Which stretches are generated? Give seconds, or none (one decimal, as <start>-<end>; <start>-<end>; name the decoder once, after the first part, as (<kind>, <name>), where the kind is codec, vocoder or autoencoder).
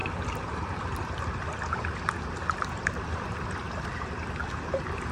0.0-0.8 (vocoder, BigVGAN v2); 2.4-4.2